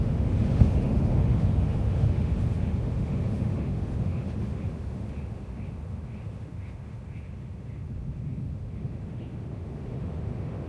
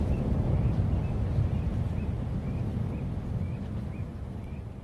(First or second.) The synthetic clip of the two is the first